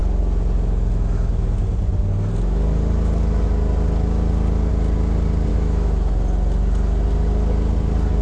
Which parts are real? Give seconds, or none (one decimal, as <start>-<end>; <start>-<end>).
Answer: 0.0-5.5; 6.1-8.2